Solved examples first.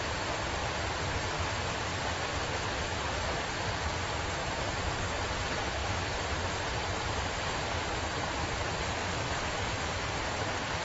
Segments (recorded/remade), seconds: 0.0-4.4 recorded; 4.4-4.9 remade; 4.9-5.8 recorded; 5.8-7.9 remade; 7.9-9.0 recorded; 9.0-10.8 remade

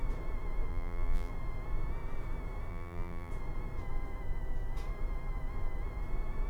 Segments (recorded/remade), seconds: 0.0-0.7 recorded; 0.7-1.3 remade; 1.3-2.7 recorded; 2.7-3.3 remade; 3.3-6.5 recorded